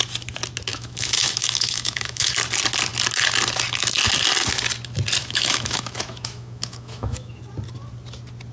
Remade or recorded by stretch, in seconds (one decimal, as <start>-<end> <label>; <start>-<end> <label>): 0.0-0.7 recorded; 0.7-2.3 remade; 2.3-5.2 recorded; 5.2-7.4 remade; 7.4-8.5 recorded